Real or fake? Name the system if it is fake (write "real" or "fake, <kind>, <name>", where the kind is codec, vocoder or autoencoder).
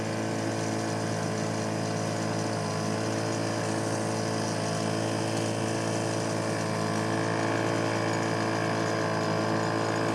real